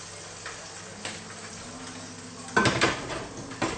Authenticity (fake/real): real